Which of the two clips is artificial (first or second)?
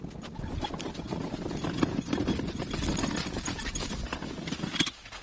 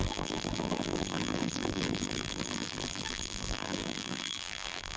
second